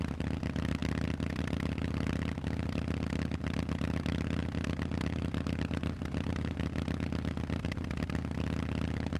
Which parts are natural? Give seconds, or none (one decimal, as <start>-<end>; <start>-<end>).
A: 0.0-9.2